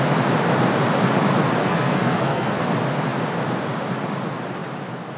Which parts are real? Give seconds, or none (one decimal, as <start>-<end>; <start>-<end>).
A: 0.0-1.6; 2.6-5.2